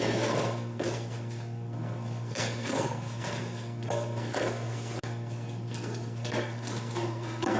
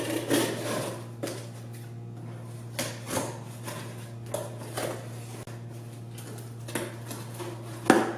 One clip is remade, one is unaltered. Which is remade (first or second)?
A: first